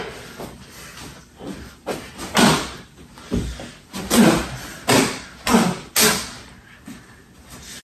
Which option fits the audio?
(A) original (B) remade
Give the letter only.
A